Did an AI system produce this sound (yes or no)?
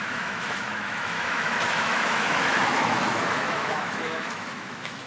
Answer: yes